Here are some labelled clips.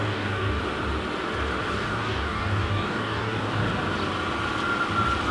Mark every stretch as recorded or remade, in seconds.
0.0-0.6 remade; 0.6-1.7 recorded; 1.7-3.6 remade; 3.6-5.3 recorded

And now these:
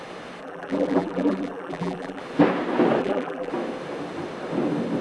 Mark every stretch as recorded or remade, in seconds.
0.0-0.4 recorded; 0.4-2.2 remade; 2.2-3.0 recorded; 3.0-3.5 remade; 3.5-5.0 recorded